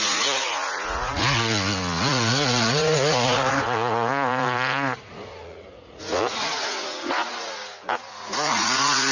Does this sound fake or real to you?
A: fake